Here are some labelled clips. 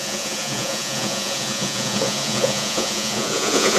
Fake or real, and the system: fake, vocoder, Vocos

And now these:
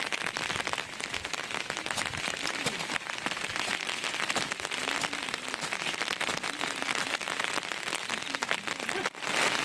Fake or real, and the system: real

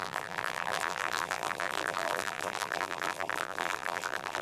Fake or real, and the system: fake, vocoder, BigVGAN v2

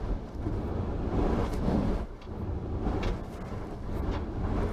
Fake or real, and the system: real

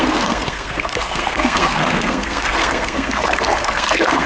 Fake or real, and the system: fake, codec, SNAC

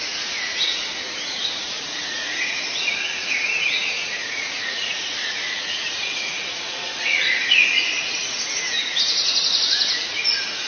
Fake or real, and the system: fake, vocoder, Vocos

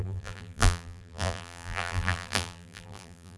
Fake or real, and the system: fake, vocoder, BigVGAN v2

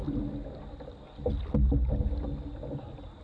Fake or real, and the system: real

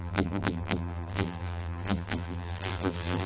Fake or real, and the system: fake, vocoder, BigVGAN v2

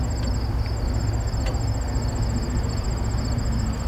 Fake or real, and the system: real